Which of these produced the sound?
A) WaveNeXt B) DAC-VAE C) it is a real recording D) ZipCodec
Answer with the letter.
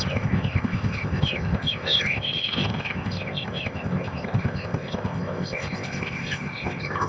D